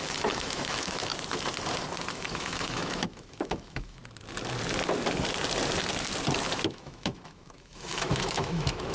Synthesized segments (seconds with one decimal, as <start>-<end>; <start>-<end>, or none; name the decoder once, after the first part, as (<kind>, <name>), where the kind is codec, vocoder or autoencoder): 0.0-1.1 (autoencoder, DAC-VAE); 2.1-4.0; 6.7-8.9